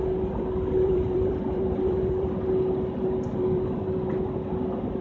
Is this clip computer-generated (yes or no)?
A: yes